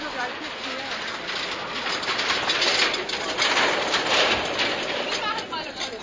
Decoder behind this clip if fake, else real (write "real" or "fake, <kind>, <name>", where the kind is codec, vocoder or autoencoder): real